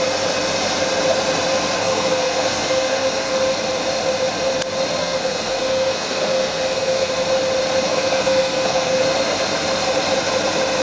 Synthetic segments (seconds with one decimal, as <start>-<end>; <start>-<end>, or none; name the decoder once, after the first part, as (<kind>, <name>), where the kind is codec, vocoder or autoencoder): 1.8-3.3 (codec, SNAC); 5.0-7.1; 7.9-9.0